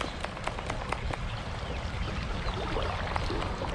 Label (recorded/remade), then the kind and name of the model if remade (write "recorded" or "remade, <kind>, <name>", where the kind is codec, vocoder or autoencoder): recorded